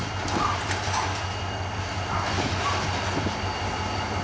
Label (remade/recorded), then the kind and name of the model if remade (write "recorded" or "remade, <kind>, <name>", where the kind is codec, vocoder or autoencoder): recorded